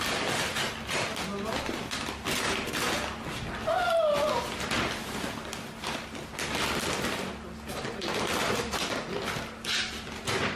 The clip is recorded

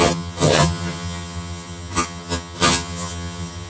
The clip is remade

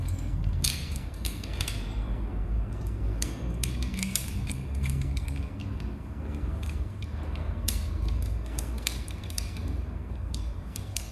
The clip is remade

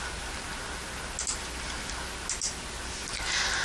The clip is recorded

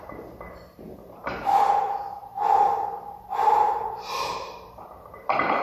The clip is remade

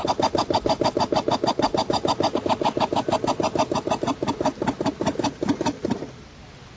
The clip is recorded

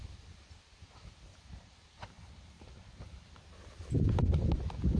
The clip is recorded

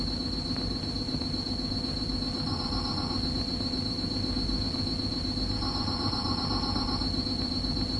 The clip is recorded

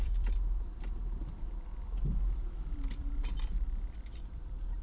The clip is remade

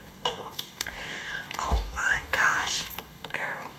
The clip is remade